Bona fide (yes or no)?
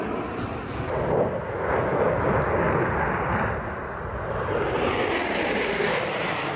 yes